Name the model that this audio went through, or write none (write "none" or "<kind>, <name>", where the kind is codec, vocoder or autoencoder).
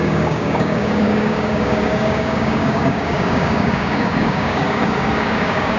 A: codec, DAC